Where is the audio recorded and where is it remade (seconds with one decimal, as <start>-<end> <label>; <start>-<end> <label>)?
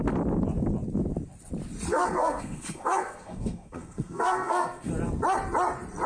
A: 0.0-1.9 recorded; 1.9-4.9 remade; 4.9-6.1 recorded